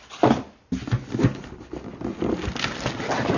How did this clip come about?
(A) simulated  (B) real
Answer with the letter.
B